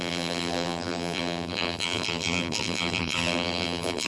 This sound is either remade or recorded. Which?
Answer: remade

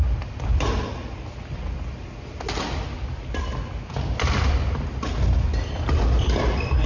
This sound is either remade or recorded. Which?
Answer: recorded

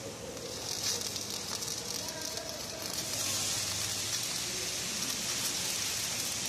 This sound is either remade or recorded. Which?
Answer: recorded